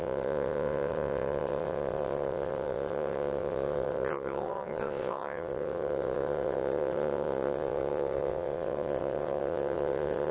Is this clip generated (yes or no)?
yes